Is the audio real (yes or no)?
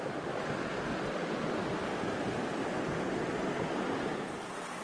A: yes